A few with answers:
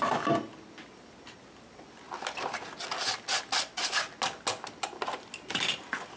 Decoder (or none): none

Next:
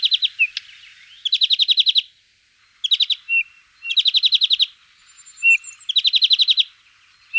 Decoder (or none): none